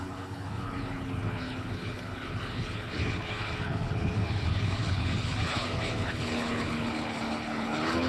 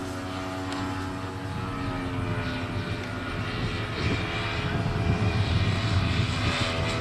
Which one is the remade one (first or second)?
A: first